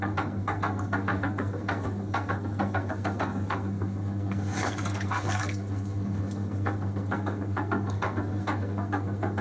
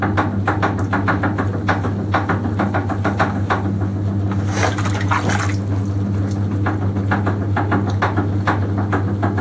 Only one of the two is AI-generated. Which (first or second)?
first